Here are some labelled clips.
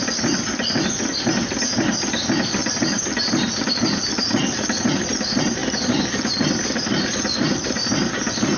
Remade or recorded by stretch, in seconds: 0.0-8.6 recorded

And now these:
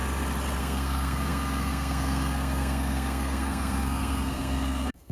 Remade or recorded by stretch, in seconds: 0.0-0.6 recorded; 0.6-5.1 remade